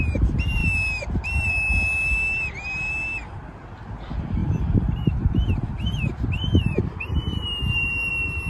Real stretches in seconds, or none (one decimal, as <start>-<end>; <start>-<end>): 0.0-4.4; 5.1-7.2; 8.1-8.5